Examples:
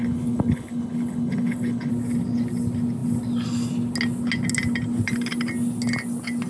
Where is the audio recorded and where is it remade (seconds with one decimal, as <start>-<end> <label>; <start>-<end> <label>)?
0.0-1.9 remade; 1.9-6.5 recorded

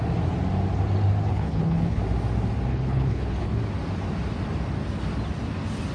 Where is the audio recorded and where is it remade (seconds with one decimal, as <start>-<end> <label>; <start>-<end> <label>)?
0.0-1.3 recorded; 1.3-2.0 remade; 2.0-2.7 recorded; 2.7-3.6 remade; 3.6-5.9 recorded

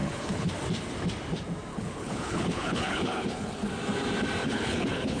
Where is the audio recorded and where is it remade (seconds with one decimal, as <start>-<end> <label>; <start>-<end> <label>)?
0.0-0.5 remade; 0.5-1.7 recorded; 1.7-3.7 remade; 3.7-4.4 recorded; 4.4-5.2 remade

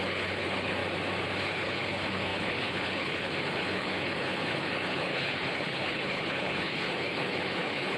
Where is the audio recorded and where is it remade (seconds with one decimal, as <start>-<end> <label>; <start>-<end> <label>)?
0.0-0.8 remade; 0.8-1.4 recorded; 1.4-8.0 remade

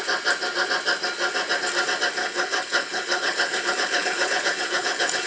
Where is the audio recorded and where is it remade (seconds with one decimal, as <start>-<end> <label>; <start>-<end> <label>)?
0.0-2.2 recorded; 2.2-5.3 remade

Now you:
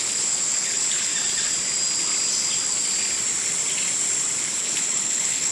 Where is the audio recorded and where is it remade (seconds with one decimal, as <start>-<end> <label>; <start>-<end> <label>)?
0.0-1.1 remade; 1.1-4.4 recorded; 4.4-5.5 remade